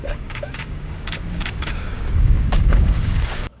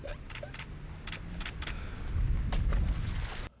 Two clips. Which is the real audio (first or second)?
second